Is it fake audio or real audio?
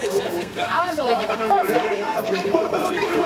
fake